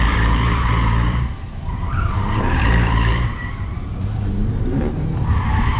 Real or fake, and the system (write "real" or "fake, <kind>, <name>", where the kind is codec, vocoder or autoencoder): fake, vocoder, BigVGAN v2